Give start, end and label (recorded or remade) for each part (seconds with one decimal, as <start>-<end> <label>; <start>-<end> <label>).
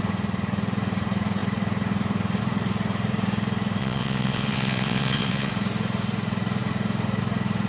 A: 0.0-3.8 recorded; 3.8-5.5 remade; 5.5-7.7 recorded